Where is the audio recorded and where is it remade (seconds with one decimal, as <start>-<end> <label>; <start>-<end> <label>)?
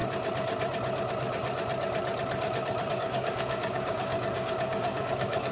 0.0-2.9 recorded; 2.9-5.5 remade